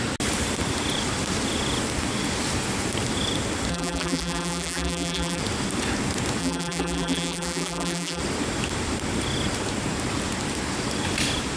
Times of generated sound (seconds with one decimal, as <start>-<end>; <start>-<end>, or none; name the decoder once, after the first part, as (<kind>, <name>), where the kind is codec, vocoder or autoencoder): 3.7-5.4 (vocoder, BigVGAN v2); 6.4-8.2

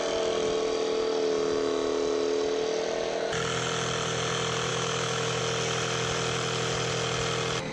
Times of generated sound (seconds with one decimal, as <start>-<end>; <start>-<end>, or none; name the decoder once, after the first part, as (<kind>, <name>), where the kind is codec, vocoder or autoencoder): 4.7-5.4 (autoencoder, DAC-VAE)